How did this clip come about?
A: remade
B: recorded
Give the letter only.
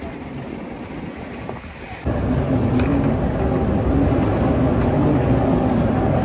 B